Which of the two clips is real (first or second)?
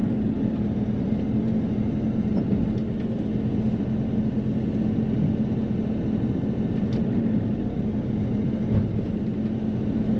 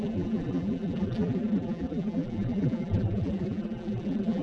first